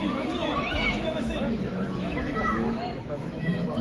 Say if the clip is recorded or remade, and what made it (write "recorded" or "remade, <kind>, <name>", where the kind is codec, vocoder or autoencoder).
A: remade, autoencoder, DAC-VAE